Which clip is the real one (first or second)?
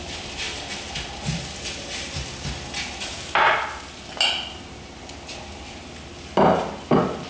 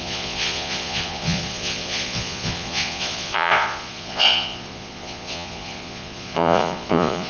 first